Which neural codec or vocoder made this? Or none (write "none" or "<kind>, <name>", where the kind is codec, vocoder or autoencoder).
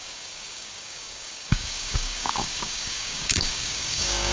codec, DAC